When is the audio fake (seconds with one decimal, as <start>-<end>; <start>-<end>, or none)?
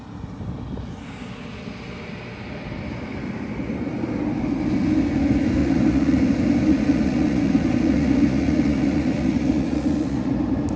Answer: 5.6-6.2; 6.7-10.3